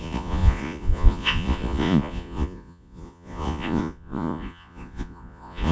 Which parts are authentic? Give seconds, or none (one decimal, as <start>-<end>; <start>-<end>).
none